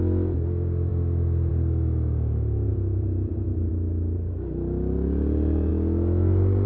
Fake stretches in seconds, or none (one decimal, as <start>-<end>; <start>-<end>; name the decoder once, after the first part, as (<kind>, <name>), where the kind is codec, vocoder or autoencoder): 2.7-3.7 (vocoder, Vocos)